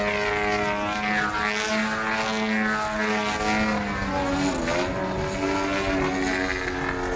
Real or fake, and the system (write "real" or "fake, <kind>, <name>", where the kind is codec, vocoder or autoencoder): real